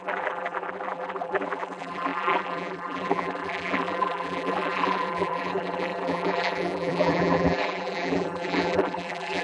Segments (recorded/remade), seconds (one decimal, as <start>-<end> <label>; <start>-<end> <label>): 0.0-9.4 remade